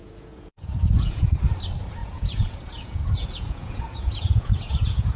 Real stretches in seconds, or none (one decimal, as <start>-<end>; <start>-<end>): 1.3-2.0

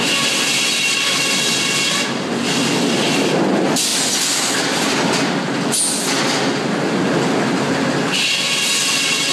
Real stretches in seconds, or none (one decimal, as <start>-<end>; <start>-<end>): 0.0-9.3

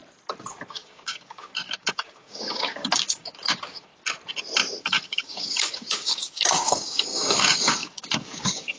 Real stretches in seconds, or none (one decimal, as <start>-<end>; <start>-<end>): 0.0-0.7; 3.9-4.8

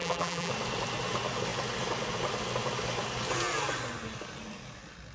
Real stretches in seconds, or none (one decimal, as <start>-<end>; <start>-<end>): 0.5-5.1